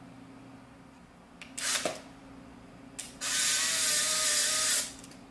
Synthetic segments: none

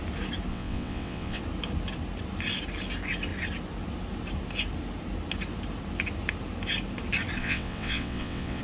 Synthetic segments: 0.5-1.4 (vocoder, WaveNeXt); 7.4-8.6